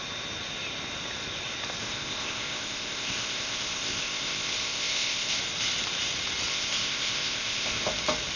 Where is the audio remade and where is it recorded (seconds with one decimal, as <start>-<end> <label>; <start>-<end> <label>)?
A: 0.0-1.8 recorded; 1.8-5.4 remade; 5.4-6.5 recorded; 6.5-7.9 remade; 7.9-8.4 recorded